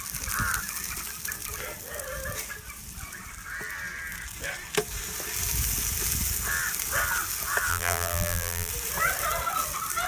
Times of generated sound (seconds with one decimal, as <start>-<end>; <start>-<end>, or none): 7.7-8.7

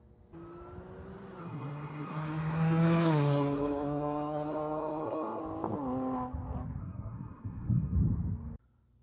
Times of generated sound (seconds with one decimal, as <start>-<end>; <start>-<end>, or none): 1.4-5.4; 6.8-8.0

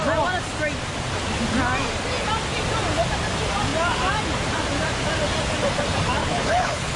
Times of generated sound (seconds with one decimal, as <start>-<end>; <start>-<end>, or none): 6.2-7.0

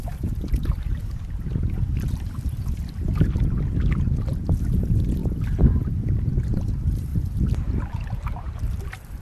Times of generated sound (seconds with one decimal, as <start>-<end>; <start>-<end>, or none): 0.0-1.0; 4.8-5.2; 6.3-7.1; 7.8-9.2

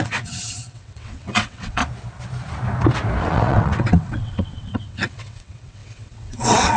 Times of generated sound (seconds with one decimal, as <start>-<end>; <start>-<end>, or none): 0.0-1.8; 3.2-6.8

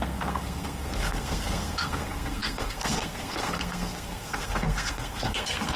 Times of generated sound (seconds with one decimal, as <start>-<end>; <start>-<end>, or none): 0.0-5.8

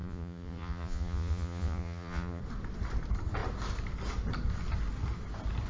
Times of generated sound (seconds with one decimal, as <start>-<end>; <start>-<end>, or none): 0.0-2.4